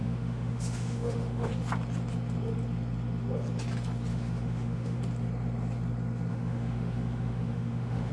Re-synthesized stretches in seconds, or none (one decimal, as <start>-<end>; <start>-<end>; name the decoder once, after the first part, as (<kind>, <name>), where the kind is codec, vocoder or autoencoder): 0.0-1.5 (autoencoder, DAC-VAE); 4.1-5.0; 6.3-8.1

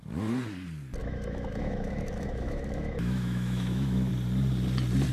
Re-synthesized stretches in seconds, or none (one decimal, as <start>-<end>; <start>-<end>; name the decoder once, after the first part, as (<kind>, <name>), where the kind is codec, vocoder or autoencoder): 1.0-4.1 (autoencoder, DAC-VAE)